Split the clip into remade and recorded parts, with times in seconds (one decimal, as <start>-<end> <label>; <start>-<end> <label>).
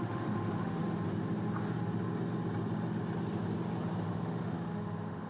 0.0-0.8 remade; 0.8-4.0 recorded; 4.0-5.3 remade